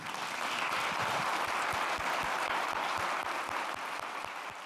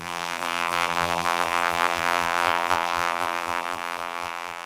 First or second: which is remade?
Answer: second